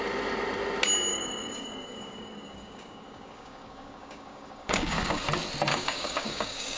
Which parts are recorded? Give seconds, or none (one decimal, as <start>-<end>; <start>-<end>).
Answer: 0.0-1.1; 5.2-5.7